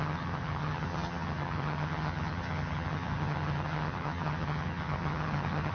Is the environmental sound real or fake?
fake